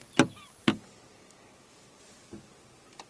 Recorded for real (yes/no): yes